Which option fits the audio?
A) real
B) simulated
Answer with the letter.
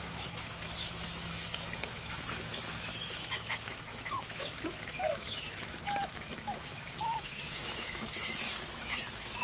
B